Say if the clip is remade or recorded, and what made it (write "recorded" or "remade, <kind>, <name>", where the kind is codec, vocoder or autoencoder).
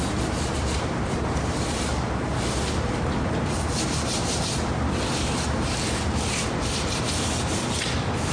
remade, vocoder, BigVGAN v2